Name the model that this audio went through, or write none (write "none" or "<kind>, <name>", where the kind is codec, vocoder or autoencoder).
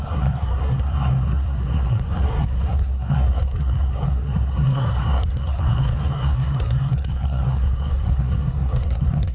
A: codec, SNAC